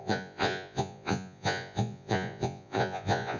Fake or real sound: fake